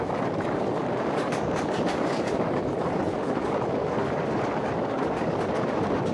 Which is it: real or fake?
fake